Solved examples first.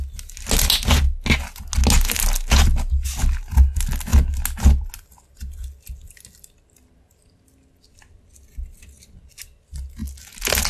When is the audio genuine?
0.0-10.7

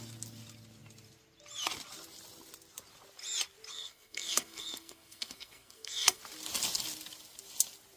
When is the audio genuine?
0.0-3.7; 6.2-8.0

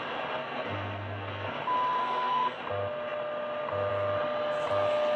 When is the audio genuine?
0.0-0.4; 1.6-2.0; 2.6-5.2